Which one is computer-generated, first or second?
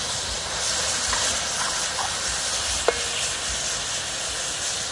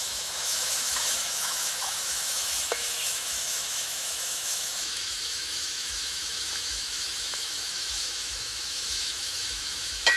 second